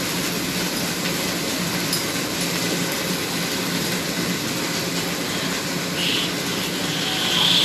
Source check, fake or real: real